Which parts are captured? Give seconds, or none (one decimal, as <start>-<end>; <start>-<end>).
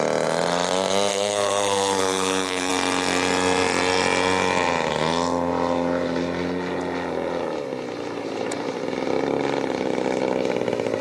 0.0-1.1; 2.7-11.0